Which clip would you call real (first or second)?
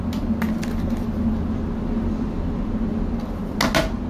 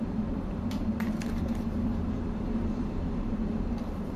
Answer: first